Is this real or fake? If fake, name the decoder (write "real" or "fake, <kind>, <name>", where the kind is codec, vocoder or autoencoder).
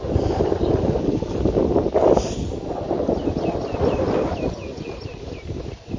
real